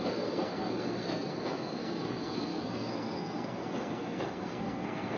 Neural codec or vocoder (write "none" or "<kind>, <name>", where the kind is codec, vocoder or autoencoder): codec, SNAC